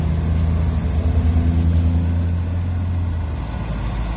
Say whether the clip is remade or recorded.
recorded